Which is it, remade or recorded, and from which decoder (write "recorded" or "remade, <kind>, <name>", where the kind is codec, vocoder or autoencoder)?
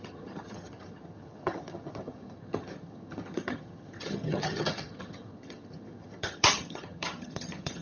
remade, vocoder, HiFi-GAN